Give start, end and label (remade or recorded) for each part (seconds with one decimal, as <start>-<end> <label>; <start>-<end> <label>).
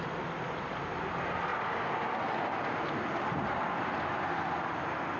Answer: 0.0-5.2 recorded